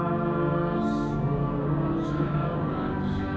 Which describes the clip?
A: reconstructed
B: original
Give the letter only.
A